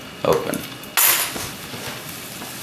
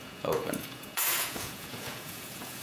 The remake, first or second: second